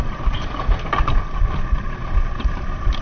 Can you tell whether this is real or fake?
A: fake